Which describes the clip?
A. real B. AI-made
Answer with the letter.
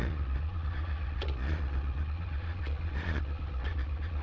B